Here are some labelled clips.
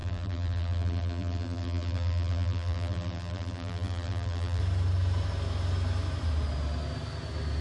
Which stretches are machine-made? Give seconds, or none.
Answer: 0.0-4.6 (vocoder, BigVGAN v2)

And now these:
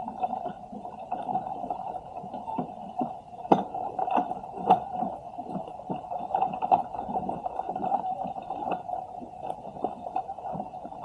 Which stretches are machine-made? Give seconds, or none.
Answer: 0.0-11.0 (vocoder, BigVGAN v2)

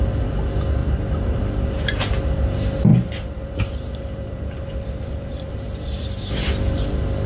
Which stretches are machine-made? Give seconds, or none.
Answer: 0.8-1.4 (vocoder, BigVGAN v2); 2.9-6.3

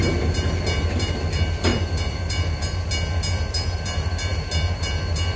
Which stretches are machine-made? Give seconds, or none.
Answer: 1.7-2.9 (vocoder, BigVGAN v2)

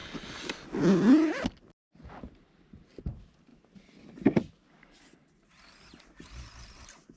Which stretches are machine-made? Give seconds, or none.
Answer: 3.5-5.5 (vocoder, BigVGAN v2)

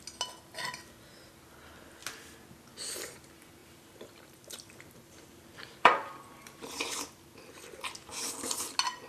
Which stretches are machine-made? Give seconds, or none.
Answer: 3.6-6.8 (vocoder, BigVGAN v2)